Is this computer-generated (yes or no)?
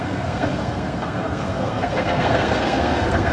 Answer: yes